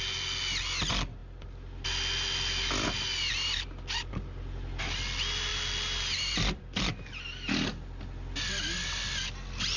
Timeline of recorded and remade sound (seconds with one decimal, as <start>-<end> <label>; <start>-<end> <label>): 0.0-5.5 recorded; 5.5-6.6 remade; 6.6-9.8 recorded